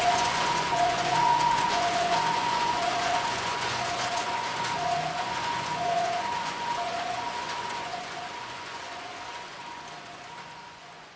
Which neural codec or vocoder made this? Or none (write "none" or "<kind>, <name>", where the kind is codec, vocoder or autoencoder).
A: vocoder, Vocos